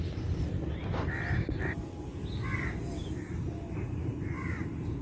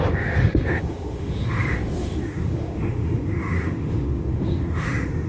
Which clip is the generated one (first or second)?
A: second